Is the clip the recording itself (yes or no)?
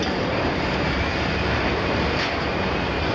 yes